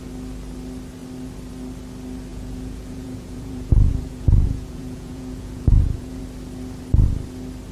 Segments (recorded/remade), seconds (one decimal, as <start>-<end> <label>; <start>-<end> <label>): 0.0-2.3 recorded; 2.3-6.2 remade; 6.2-7.7 recorded